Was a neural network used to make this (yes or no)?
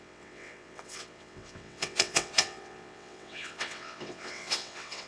yes